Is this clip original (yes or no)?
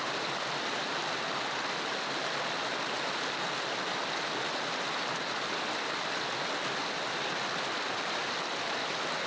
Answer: yes